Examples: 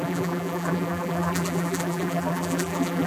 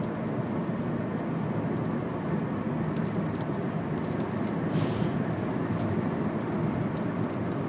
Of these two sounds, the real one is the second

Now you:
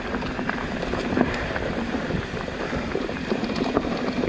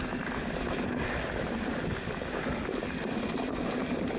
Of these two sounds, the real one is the second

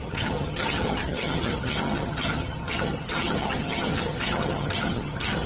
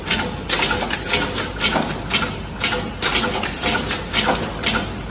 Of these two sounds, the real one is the second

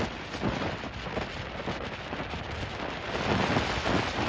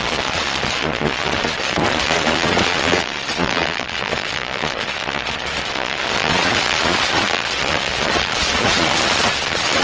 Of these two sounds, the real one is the first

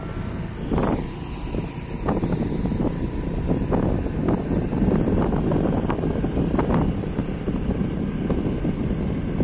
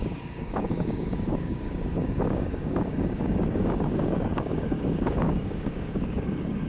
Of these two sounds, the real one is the first